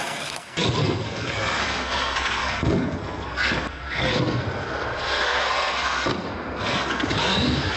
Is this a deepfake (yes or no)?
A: yes